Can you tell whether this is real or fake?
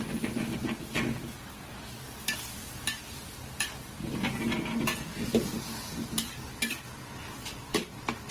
real